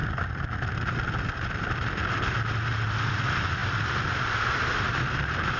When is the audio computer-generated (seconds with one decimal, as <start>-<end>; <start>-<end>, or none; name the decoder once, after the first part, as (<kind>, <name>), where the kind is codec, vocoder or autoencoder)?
none